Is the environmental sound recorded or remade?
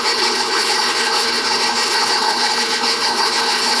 remade